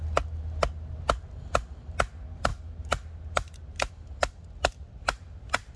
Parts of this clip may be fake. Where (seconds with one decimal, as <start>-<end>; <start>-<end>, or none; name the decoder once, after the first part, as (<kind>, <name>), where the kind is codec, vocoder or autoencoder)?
none